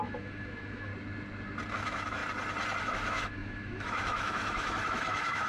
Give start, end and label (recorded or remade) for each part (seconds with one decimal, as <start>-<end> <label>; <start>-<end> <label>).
0.0-0.9 remade; 0.9-1.7 recorded; 1.7-2.2 remade; 2.2-2.8 recorded; 2.8-5.5 remade